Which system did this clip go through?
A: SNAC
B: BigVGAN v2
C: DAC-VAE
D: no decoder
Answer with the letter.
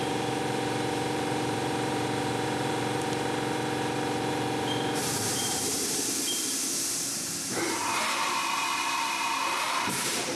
B